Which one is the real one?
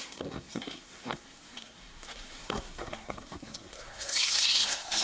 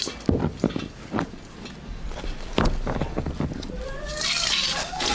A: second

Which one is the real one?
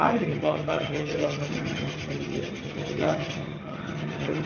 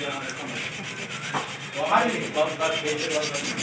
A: second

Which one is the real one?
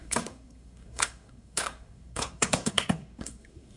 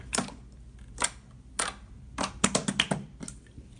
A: second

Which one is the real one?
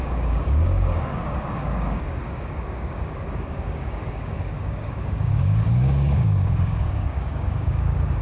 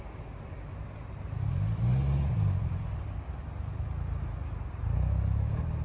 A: second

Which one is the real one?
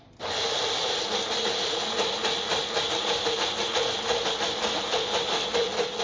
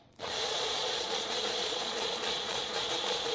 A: first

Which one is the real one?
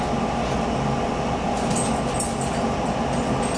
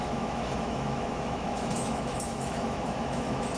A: first